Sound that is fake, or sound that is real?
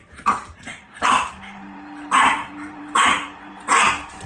fake